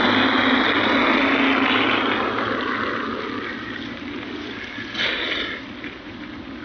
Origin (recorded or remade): recorded